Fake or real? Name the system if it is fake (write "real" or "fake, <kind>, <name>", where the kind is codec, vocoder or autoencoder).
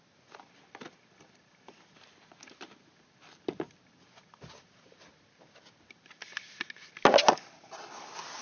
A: real